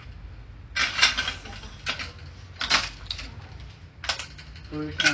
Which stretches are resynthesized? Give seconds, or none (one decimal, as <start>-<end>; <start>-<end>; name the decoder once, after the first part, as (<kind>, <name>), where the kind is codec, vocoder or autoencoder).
none